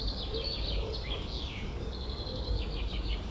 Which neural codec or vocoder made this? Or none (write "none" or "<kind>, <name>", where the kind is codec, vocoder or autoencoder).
codec, DAC